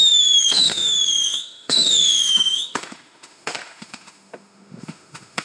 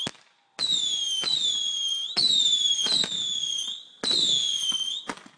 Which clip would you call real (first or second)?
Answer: second